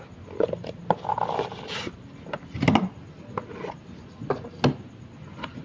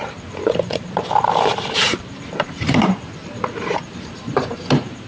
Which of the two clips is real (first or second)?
first